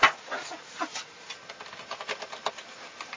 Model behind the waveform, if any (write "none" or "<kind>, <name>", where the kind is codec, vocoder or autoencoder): none